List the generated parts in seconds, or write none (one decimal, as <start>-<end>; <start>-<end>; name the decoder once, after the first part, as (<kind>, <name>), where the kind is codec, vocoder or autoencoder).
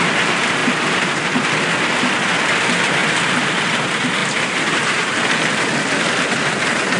3.0-3.6 (vocoder, BigVGAN v2); 4.2-5.2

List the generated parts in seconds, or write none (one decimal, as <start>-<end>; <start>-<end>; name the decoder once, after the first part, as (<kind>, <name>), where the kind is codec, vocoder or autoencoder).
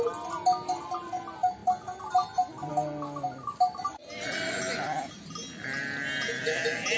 none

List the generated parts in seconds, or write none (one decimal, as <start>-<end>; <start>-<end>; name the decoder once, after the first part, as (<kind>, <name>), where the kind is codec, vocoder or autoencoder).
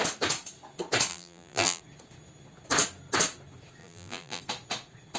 1.1-1.8 (vocoder, BigVGAN v2); 3.8-4.4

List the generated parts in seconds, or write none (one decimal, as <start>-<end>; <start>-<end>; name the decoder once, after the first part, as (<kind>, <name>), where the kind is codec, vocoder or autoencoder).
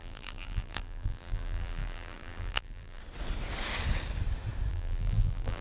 0.0-3.0 (vocoder, BigVGAN v2); 4.7-5.6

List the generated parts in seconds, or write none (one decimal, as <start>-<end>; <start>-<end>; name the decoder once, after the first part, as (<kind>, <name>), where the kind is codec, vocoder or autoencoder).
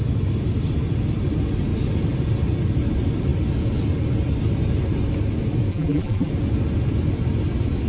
5.7-6.3 (vocoder, BigVGAN v2)